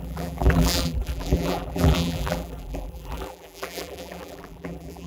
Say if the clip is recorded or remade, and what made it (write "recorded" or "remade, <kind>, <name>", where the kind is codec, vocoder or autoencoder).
remade, vocoder, BigVGAN v2